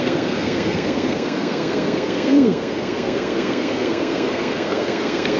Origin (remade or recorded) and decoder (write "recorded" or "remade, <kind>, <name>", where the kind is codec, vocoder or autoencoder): remade, codec, SNAC